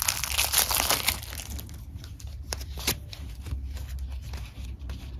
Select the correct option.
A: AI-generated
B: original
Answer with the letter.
B